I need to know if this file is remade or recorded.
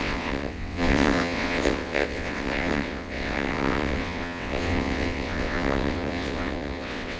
remade